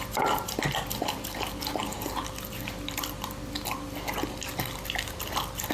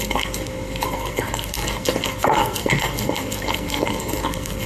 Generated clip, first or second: second